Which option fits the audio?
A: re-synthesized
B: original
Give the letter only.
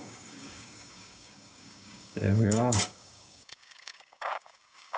A